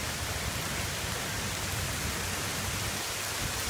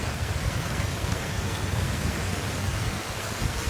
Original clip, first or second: first